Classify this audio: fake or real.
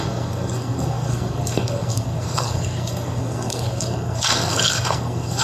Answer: fake